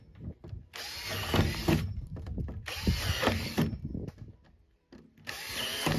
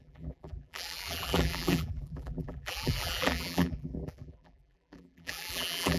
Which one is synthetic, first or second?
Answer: second